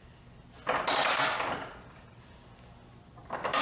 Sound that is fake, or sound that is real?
real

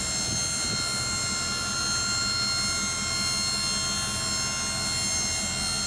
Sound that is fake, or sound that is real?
real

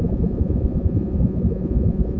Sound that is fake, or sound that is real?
fake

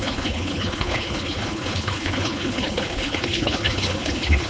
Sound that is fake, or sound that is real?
fake